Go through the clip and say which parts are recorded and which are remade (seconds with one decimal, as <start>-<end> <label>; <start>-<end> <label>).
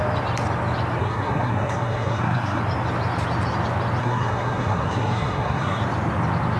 0.0-1.0 recorded; 1.0-2.6 remade; 2.6-4.0 recorded; 4.0-5.8 remade; 5.8-6.6 recorded